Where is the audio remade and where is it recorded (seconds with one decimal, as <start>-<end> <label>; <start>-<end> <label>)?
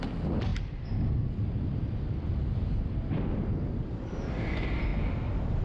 0.0-4.9 recorded; 4.9-5.6 remade